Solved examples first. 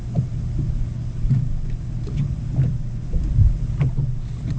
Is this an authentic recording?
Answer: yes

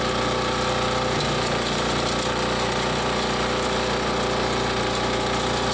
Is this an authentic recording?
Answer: yes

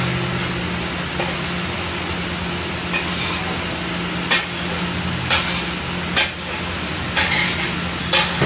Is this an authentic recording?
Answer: yes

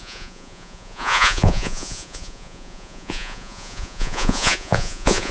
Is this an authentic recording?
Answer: no